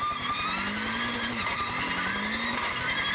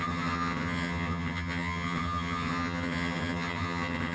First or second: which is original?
first